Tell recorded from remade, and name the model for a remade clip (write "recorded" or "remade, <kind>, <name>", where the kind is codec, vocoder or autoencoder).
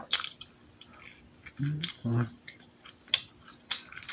recorded